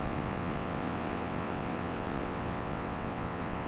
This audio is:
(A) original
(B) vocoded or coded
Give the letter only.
B